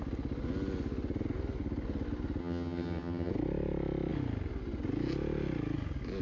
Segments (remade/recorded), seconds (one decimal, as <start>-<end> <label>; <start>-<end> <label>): 0.0-2.4 recorded; 2.4-3.3 remade; 3.3-6.2 recorded